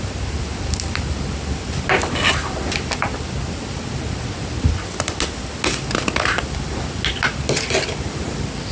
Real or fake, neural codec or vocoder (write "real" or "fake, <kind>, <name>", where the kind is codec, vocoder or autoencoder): real